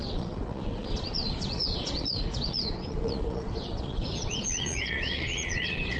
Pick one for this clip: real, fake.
fake